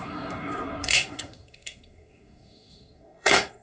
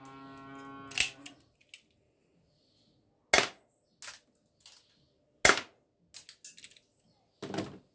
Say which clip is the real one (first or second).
second